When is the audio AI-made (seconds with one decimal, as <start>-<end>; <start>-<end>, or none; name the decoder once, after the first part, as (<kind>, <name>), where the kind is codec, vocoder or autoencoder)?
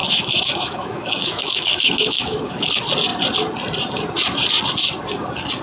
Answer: 0.0-2.7 (autoencoder, DAC-VAE)